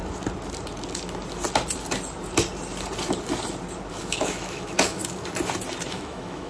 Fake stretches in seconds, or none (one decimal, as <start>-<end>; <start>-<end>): 3.9-5.0; 5.9-6.5